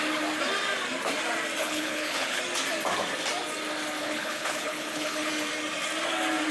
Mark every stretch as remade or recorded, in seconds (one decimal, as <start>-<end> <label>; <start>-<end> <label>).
0.0-1.6 recorded; 1.6-2.4 remade; 2.4-4.0 recorded; 4.0-5.3 remade; 5.3-6.5 recorded